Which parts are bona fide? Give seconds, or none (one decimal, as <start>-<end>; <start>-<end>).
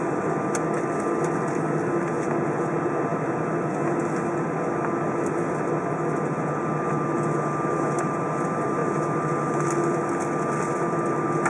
0.0-11.5